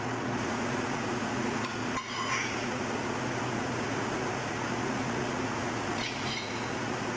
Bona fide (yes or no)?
no